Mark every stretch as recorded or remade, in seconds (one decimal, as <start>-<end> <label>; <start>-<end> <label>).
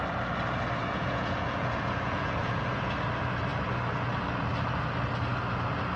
0.0-0.8 recorded; 0.8-2.9 remade; 2.9-6.0 recorded